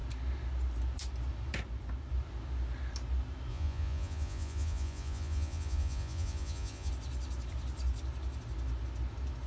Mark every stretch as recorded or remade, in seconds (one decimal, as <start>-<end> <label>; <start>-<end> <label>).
0.0-3.5 recorded; 3.5-6.9 remade; 6.9-9.5 recorded